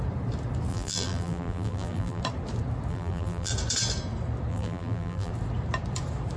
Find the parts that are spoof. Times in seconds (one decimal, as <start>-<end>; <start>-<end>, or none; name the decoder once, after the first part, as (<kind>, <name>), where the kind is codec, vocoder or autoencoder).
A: 0.7-2.2 (vocoder, BigVGAN v2); 2.9-3.5; 4.5-5.3